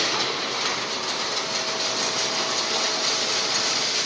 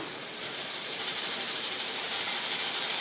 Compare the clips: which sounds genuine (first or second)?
first